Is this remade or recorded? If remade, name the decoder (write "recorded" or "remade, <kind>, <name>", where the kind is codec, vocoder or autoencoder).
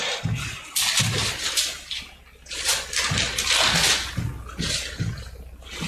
recorded